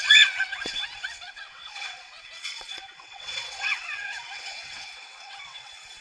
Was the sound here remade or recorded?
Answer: remade